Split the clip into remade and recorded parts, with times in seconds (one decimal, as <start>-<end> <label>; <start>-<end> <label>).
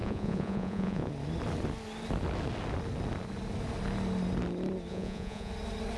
0.0-1.1 remade; 1.1-4.9 recorded; 4.9-5.5 remade; 5.5-6.0 recorded